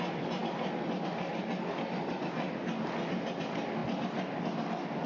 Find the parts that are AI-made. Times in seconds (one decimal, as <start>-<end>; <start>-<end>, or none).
none